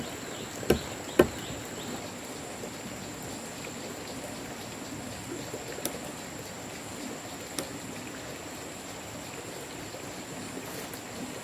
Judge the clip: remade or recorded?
recorded